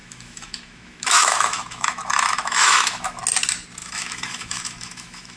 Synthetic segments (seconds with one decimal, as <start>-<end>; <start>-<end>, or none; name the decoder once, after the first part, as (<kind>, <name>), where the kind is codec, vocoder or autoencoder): 0.0-3.2 (autoencoder, DAC-VAE); 3.8-5.4